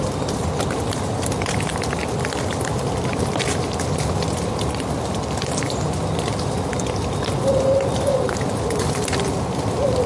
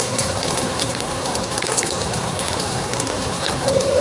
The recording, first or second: first